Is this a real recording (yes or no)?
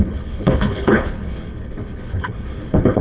no